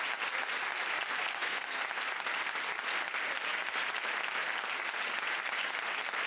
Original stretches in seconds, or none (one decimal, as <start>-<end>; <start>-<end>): 0.0-1.3; 1.8-6.3